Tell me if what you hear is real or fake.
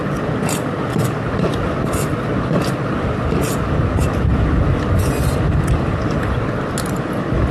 real